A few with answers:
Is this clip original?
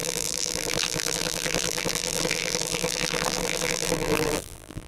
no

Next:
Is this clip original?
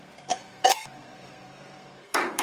no